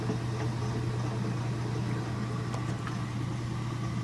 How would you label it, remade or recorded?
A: recorded